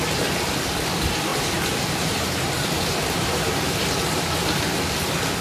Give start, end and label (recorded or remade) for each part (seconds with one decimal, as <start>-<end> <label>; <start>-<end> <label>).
0.0-1.3 recorded; 1.3-3.7 remade; 3.7-5.4 recorded